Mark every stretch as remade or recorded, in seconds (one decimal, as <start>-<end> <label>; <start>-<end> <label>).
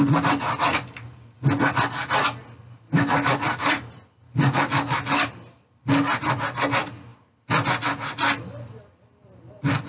0.0-9.9 recorded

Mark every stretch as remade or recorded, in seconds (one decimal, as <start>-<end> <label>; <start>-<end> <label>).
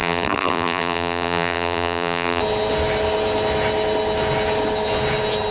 0.0-2.4 remade; 2.4-5.5 recorded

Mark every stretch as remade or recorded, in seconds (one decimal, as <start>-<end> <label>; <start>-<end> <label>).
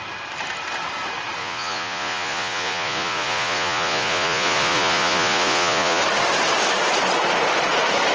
0.0-1.4 recorded; 1.4-6.0 remade; 6.0-8.1 recorded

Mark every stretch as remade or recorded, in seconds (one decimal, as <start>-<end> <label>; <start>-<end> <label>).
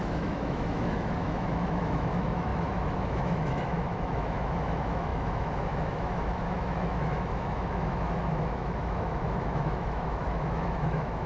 0.0-11.3 remade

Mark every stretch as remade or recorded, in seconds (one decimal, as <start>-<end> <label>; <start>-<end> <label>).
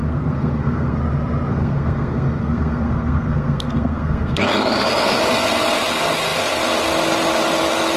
0.0-1.0 remade; 1.0-1.5 recorded; 1.5-4.4 remade; 4.4-8.0 recorded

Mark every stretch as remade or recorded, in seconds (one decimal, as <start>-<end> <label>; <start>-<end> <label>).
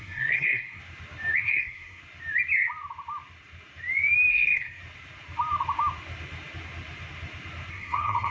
0.0-0.8 remade; 0.8-1.4 recorded; 1.4-2.0 remade; 2.0-4.3 recorded; 4.3-4.8 remade; 4.8-7.7 recorded; 7.7-8.3 remade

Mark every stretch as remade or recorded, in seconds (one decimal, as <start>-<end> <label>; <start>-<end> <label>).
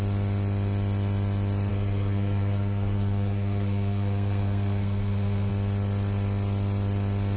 0.0-1.7 recorded; 1.7-5.5 remade; 5.5-7.4 recorded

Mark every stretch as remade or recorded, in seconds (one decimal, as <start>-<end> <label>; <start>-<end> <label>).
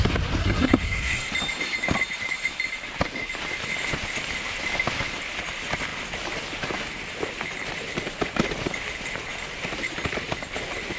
0.0-0.4 recorded; 0.4-1.3 remade; 1.3-11.0 recorded